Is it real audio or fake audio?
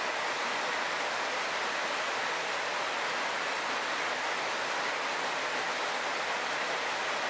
real